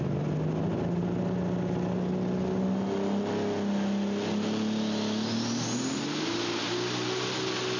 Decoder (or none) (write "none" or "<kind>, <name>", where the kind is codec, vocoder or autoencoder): none